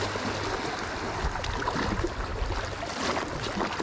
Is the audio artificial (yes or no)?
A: no